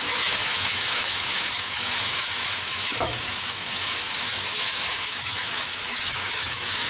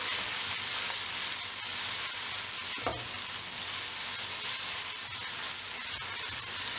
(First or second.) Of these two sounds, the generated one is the first